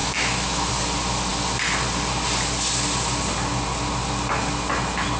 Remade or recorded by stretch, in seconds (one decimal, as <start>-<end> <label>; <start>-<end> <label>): 0.0-0.7 remade; 0.7-5.2 recorded